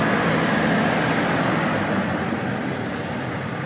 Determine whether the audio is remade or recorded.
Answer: recorded